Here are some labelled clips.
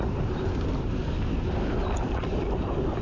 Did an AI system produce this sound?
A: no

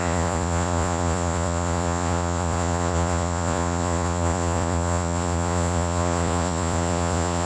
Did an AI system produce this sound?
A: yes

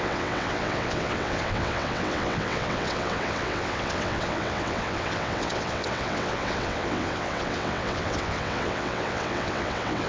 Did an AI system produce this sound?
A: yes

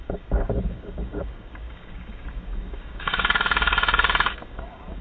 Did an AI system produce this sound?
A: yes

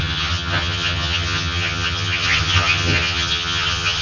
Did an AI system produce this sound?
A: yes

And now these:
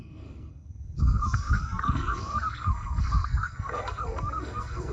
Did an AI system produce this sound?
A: yes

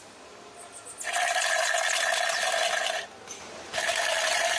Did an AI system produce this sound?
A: no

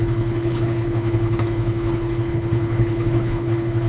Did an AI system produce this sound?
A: yes